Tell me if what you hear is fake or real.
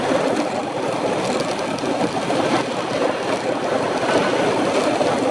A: real